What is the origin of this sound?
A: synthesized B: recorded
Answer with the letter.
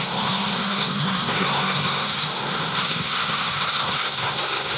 A